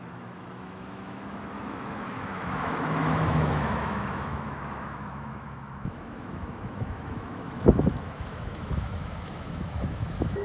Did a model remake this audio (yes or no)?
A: yes